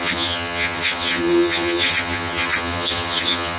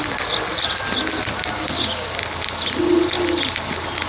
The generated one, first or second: first